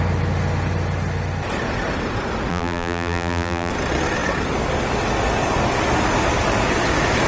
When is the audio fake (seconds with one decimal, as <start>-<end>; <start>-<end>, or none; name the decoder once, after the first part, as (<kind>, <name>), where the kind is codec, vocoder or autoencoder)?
2.5-3.7 (vocoder, BigVGAN v2)